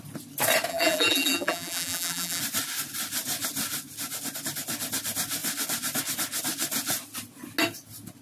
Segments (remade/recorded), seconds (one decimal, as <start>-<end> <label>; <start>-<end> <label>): 0.0-0.7 recorded; 0.7-2.4 remade; 2.4-8.2 recorded

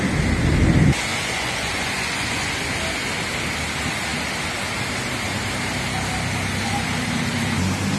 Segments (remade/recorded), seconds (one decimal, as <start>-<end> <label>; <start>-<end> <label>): 0.0-1.1 recorded; 1.1-2.5 remade; 2.5-8.0 recorded